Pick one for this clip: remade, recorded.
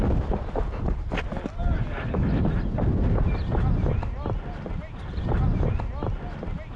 recorded